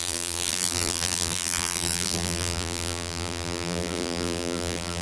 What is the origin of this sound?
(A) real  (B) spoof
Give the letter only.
B